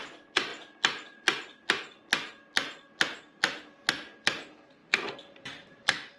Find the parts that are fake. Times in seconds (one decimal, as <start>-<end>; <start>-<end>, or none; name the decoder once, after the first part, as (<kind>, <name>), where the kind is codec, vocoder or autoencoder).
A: 0.0-0.5 (vocoder, BigVGAN v2); 4.2-6.2